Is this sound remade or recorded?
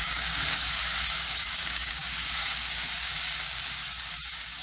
remade